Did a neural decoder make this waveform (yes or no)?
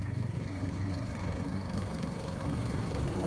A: yes